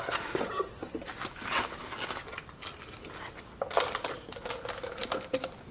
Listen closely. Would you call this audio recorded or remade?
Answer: recorded